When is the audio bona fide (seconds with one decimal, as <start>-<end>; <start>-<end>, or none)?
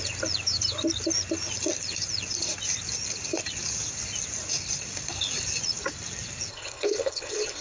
0.0-6.5